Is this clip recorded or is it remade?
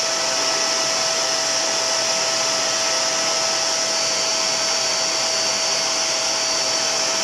recorded